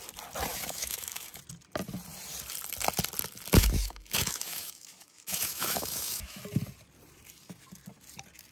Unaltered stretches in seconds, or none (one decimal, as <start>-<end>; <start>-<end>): 0.0-0.5; 1.4-3.6; 6.4-8.5